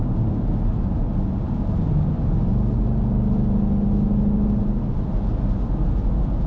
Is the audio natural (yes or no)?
yes